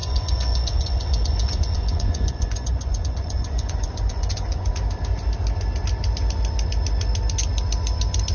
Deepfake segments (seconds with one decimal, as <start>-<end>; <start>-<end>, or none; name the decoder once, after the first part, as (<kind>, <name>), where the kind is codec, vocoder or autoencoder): 0.0-4.7 (vocoder, Vocos)

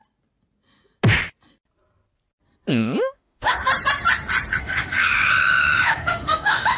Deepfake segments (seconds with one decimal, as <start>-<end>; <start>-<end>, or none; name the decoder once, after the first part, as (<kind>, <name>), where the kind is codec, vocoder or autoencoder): 2.7-3.7 (autoencoder, DAC-VAE); 4.6-6.8

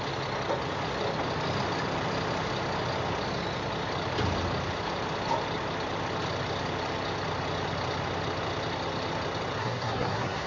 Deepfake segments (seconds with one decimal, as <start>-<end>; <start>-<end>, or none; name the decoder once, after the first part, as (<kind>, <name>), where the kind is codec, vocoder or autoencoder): 9.6-10.5 (codec, SNAC)